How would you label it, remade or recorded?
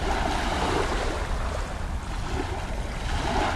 recorded